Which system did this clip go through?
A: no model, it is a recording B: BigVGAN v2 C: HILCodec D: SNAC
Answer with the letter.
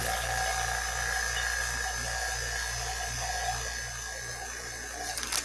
A